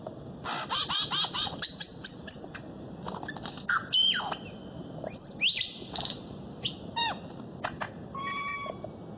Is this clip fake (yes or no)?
no